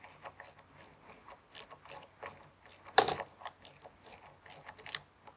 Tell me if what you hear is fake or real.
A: real